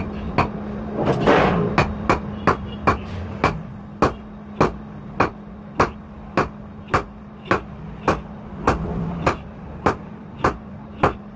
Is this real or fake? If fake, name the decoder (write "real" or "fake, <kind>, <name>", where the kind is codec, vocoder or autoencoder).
real